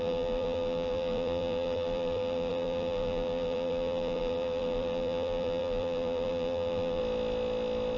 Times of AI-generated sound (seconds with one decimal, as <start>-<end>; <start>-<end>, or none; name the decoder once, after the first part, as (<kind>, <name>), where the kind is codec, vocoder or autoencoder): 0.0-7.0 (vocoder, BigVGAN v2)